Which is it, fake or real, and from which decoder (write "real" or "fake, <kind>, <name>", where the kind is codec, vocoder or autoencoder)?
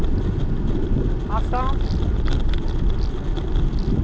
real